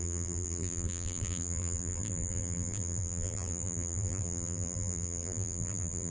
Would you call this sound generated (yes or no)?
yes